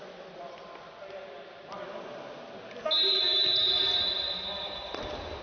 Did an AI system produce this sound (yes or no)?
no